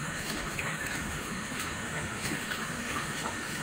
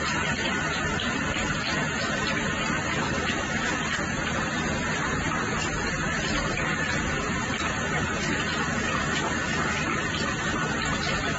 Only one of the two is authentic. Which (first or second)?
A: second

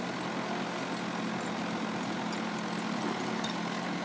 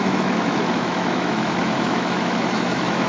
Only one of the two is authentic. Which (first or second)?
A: first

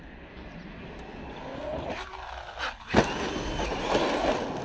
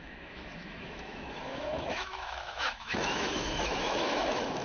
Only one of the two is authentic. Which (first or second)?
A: first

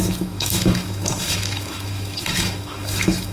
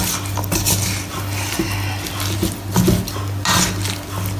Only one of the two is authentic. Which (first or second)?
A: second